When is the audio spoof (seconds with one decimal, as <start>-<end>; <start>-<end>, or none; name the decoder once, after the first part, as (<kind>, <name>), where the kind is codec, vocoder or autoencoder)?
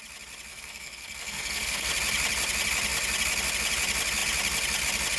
0.5-1.9 (codec, SNAC)